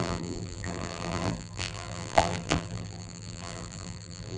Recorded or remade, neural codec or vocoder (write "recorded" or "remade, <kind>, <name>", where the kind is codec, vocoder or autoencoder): remade, vocoder, BigVGAN v2